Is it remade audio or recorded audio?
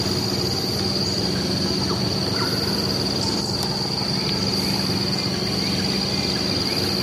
recorded